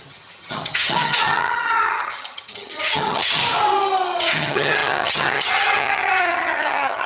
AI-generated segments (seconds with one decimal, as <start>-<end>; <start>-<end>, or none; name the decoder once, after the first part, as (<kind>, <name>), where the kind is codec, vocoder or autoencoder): 0.0-3.4 (vocoder, HiFi-GAN); 4.2-7.1